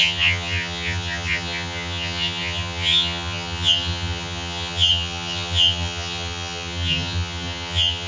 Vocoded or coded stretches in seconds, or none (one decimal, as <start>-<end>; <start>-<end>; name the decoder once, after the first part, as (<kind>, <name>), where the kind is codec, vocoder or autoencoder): 0.0-8.1 (vocoder, HiFi-GAN)